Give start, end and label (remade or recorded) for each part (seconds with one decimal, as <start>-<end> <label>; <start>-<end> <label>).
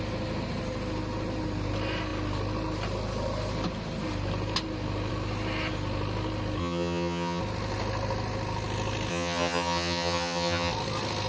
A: 0.0-6.6 recorded; 6.6-7.4 remade; 7.4-9.1 recorded; 9.1-10.7 remade; 10.7-11.3 recorded